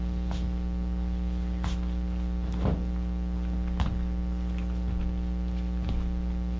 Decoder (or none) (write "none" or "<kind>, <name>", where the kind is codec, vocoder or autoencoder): none